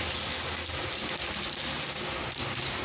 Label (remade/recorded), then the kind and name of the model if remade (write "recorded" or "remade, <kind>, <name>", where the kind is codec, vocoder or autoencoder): recorded